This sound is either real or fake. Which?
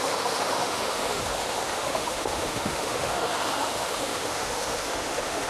fake